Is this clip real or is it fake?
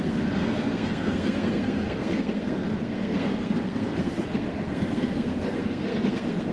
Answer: fake